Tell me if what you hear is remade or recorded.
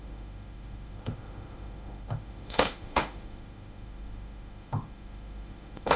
remade